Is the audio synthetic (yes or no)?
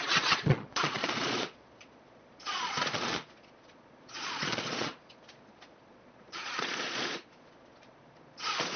yes